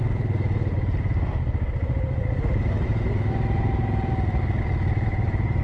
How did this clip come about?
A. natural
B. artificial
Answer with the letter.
B